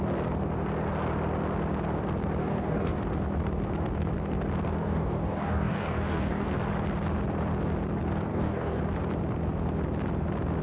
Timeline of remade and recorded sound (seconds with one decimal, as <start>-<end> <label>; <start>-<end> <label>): 0.0-2.4 recorded; 2.4-3.0 remade; 3.0-4.8 recorded; 4.8-6.5 remade; 6.5-8.3 recorded; 8.3-8.8 remade; 8.8-10.6 recorded